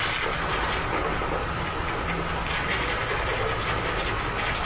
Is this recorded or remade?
recorded